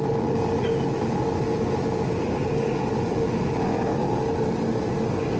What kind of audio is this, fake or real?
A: real